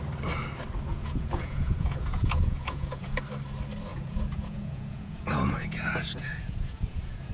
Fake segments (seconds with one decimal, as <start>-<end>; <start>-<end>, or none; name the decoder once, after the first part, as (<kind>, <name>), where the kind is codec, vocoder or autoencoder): 0.9-3.2 (vocoder, Vocos); 3.9-7.3

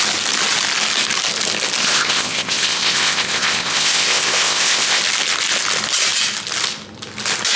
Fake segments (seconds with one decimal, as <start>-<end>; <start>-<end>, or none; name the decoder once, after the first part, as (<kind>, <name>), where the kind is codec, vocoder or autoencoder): 1.8-5.0 (codec, ZipCodec)

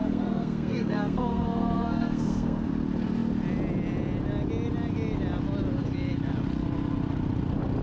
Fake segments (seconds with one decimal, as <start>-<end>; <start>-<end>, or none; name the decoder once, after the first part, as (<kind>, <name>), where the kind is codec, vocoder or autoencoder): 0.0-2.7 (codec, SNAC)

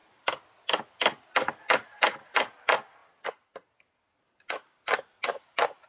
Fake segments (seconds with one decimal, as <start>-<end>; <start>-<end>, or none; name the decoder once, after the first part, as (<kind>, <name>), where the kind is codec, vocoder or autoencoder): 3.0-3.5 (vocoder, BigVGAN v2)

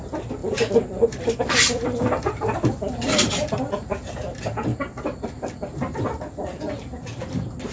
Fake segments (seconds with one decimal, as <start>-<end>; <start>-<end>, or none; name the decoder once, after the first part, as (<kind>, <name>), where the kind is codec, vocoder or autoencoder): 0.4-4.1 (vocoder, BigVGAN v2); 4.7-7.2

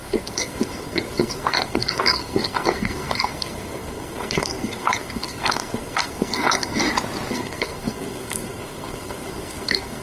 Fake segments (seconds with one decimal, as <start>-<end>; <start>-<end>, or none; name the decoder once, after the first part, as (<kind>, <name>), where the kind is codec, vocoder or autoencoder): 0.0-6.8 (codec, SNAC); 7.3-10.0

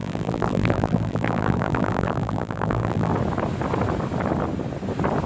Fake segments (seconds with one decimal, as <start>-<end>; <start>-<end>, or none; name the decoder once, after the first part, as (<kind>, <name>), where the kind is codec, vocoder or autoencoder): 0.0-3.1 (vocoder, BigVGAN v2)